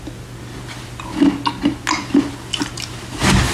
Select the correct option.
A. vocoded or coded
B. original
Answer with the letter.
B